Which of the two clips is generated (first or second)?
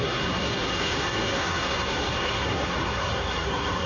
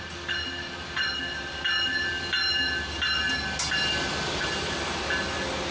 first